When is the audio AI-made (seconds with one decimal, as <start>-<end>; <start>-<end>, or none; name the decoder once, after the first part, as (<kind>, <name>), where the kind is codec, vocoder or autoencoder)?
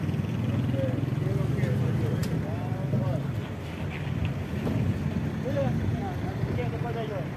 none